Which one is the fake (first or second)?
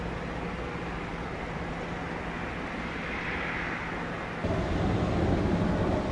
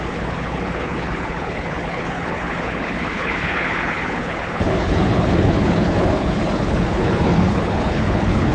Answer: second